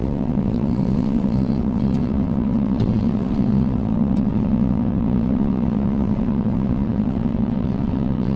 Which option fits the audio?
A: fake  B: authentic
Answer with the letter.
A